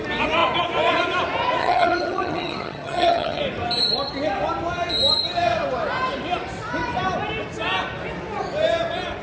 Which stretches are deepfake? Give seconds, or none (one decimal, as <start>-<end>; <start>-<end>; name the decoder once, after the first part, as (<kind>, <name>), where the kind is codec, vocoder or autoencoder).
1.6-3.4 (vocoder, HiFi-GAN)